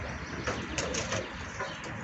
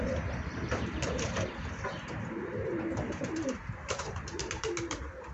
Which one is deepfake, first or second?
second